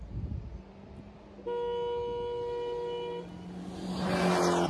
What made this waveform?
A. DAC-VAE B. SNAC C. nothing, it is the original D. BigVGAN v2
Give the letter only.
C